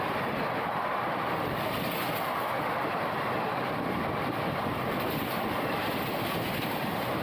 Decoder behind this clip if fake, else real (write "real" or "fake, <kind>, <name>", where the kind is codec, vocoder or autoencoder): fake, vocoder, BigVGAN v2